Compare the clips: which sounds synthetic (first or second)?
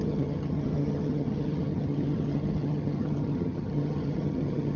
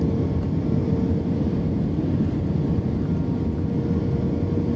first